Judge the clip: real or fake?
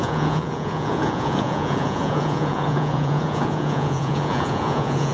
fake